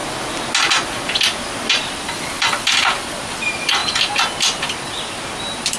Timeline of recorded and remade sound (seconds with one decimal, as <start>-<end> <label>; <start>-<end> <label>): 0.0-1.7 recorded; 1.7-5.8 remade